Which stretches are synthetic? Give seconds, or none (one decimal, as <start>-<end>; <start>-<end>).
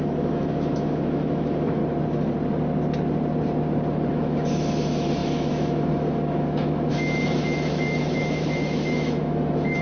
0.0-1.8; 4.1-9.8